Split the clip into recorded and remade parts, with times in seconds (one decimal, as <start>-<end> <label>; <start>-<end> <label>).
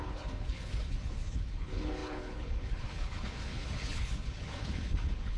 0.0-5.4 remade